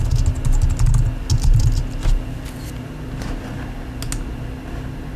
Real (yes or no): yes